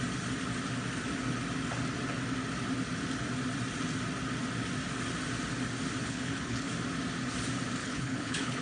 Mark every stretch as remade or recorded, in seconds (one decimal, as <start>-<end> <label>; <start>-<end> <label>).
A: 0.0-6.0 recorded; 6.0-6.7 remade; 6.7-7.8 recorded; 7.8-8.6 remade